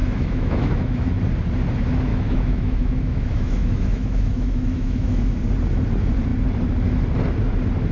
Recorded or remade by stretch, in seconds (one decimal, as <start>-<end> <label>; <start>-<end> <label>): 0.0-1.2 remade; 1.2-2.1 recorded; 2.1-5.4 remade; 5.4-7.9 recorded